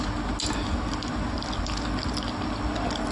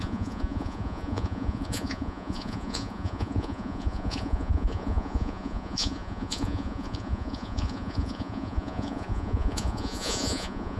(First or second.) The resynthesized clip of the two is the second